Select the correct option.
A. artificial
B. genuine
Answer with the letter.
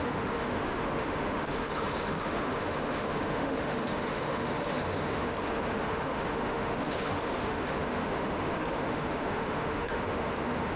A